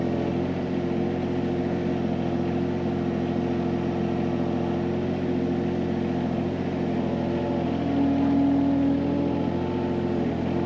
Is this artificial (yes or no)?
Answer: no